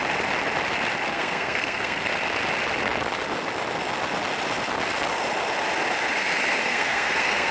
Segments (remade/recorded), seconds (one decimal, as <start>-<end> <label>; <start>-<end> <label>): 0.0-1.1 recorded; 1.1-2.1 remade; 2.1-6.6 recorded; 6.6-7.5 remade